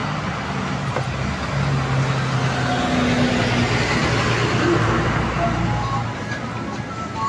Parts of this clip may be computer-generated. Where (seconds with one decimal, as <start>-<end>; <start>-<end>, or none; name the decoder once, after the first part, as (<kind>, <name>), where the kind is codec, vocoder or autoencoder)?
none